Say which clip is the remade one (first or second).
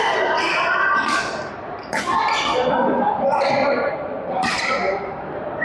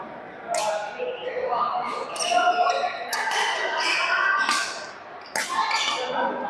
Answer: first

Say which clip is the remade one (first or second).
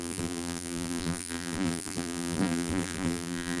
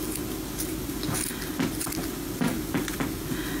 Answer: first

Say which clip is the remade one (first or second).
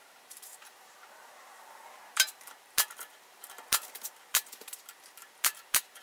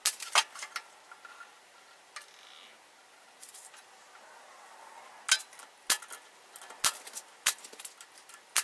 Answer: first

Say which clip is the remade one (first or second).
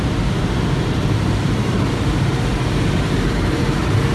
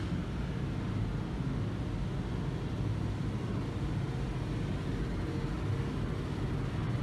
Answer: first